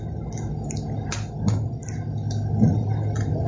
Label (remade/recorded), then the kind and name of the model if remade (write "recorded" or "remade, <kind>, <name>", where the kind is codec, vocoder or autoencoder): recorded